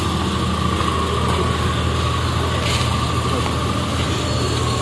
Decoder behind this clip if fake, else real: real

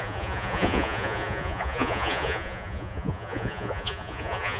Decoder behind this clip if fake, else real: fake, vocoder, Vocos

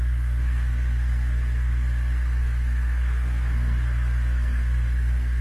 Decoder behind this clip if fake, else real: fake, codec, SNAC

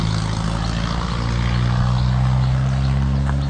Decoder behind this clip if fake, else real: real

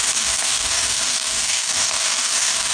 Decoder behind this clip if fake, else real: fake, codec, DAC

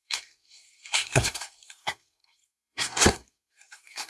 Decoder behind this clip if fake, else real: fake, codec, SNAC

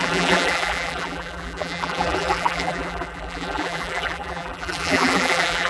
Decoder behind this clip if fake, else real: fake, vocoder, BigVGAN v2